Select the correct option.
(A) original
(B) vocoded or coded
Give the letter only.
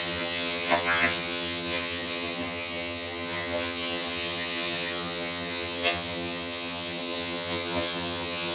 B